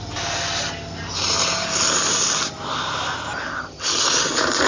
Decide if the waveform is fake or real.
real